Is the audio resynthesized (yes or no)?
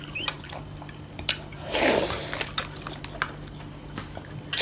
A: no